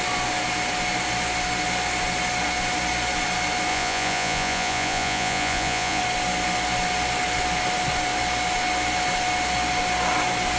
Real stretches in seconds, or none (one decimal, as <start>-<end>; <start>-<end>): 0.0-3.7; 6.0-10.6